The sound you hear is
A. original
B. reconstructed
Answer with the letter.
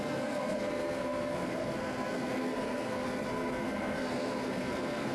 B